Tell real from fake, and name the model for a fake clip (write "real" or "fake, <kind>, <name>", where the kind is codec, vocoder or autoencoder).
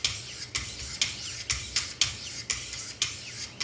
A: real